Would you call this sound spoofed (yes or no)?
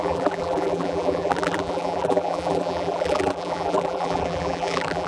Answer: yes